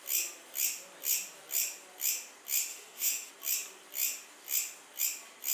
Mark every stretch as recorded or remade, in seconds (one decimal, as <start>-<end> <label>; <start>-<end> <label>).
0.0-2.7 recorded; 2.7-3.3 remade; 3.3-5.5 recorded